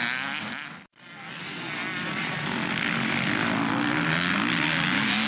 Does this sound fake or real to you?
real